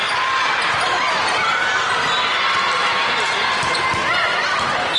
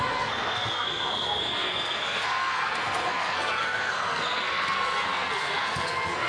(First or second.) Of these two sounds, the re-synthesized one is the second